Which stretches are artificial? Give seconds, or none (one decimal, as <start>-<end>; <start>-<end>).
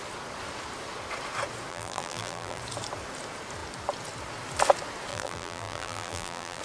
1.7-2.6; 5.1-6.6